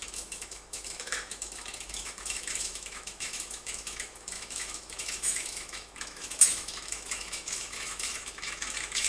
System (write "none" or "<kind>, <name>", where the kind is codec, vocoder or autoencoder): autoencoder, DAC-VAE